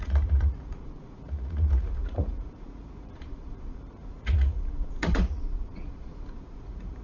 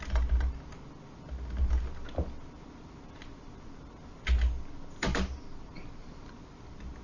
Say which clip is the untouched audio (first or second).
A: second